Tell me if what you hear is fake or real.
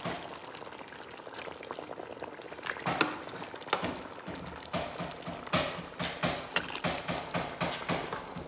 real